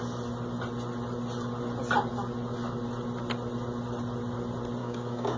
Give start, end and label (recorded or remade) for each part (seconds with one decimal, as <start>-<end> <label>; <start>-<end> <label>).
0.0-4.8 recorded; 4.8-5.4 remade

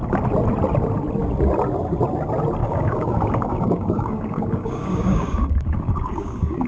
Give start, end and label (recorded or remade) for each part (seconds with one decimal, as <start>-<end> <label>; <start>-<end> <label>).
0.0-2.6 recorded; 2.6-6.7 remade

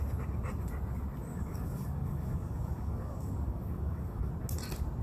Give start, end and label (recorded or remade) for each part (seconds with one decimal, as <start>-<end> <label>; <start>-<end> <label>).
0.0-1.3 recorded; 1.3-4.3 remade; 4.3-5.0 recorded

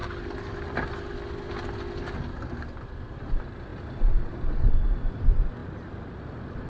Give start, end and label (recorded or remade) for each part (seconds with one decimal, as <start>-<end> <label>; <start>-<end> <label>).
0.0-6.7 recorded

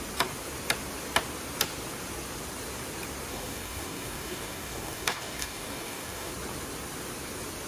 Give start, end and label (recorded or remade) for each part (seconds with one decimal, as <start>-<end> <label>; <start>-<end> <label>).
0.0-3.3 recorded; 3.3-6.3 remade; 6.3-7.7 recorded